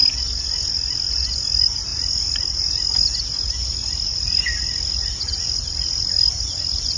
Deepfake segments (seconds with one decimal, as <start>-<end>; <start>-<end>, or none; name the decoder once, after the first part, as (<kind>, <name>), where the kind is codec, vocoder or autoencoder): none